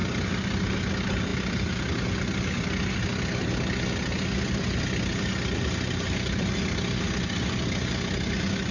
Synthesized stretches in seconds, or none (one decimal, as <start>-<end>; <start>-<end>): none